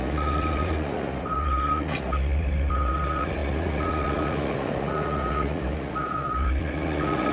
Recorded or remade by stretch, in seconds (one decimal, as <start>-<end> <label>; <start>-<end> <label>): 0.0-7.3 remade